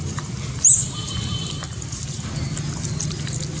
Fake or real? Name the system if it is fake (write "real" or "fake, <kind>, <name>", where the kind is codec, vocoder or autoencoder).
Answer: fake, vocoder, BigVGAN v2